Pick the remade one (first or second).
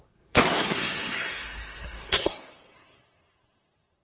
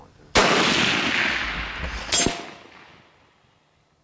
first